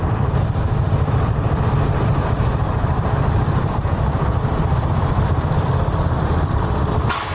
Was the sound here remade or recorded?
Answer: remade